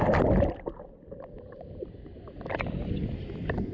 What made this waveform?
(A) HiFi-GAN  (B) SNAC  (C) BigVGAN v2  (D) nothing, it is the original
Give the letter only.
D